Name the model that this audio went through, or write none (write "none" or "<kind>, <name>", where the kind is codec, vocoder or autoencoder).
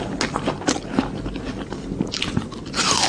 none